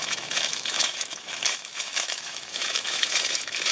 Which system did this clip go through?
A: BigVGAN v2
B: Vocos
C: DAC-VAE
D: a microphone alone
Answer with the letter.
C